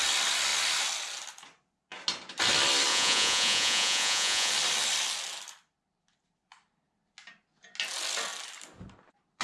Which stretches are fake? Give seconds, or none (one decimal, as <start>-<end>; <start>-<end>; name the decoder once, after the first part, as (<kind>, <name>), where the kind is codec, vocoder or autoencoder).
2.9-4.5 (vocoder, Vocos)